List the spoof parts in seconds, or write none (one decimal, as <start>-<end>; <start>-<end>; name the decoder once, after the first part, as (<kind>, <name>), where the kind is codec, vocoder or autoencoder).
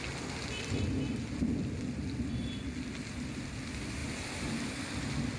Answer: none